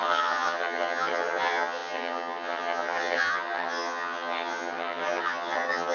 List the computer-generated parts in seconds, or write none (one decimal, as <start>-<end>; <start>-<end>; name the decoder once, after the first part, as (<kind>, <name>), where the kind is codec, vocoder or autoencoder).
0.0-5.9 (vocoder, HiFi-GAN)